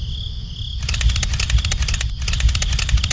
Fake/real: real